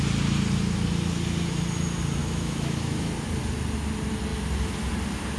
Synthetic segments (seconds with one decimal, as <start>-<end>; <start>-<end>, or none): 2.2-3.1